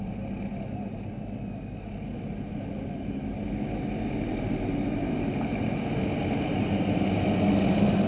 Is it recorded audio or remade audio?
recorded